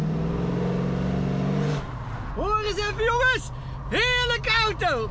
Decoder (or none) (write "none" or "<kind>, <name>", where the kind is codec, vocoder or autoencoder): none